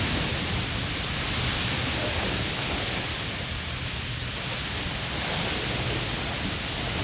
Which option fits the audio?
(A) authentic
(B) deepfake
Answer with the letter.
A